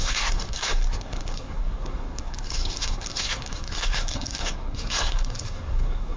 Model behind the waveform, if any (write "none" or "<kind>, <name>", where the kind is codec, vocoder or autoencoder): codec, SNAC